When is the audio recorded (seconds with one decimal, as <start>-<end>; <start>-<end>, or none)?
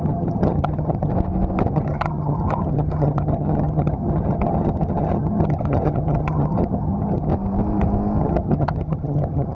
1.1-1.7; 7.3-8.2